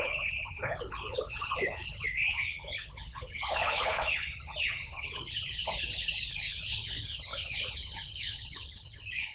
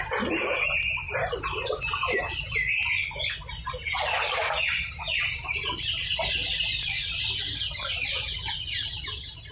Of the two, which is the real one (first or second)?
second